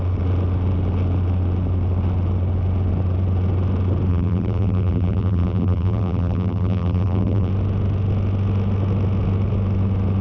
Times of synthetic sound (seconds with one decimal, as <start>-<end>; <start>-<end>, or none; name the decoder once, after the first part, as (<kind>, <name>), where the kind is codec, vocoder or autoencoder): 4.1-7.5 (vocoder, BigVGAN v2)